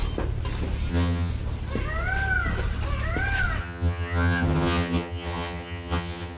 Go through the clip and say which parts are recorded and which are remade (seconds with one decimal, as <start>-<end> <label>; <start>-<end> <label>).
0.0-0.9 recorded; 0.9-1.3 remade; 1.3-3.6 recorded; 3.6-6.4 remade